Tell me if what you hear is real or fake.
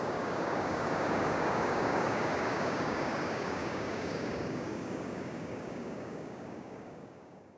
fake